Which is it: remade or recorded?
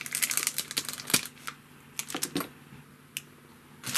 recorded